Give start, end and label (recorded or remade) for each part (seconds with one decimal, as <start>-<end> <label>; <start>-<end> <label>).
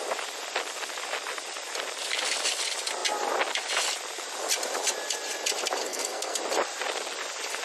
0.0-5.8 recorded; 5.8-6.4 remade; 6.4-7.6 recorded